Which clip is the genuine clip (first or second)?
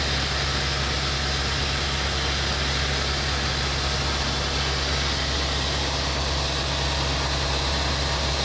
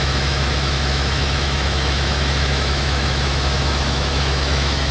first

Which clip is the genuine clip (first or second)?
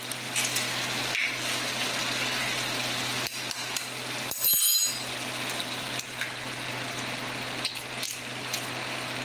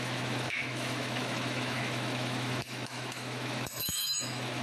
first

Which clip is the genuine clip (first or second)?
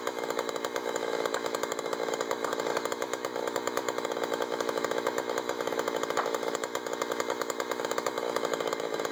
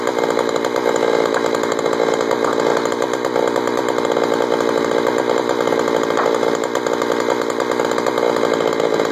second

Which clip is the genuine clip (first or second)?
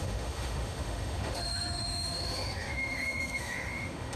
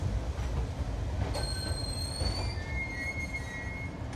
second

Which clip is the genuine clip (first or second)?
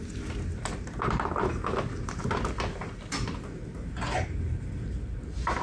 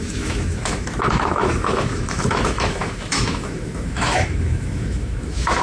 first